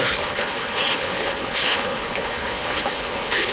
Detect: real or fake fake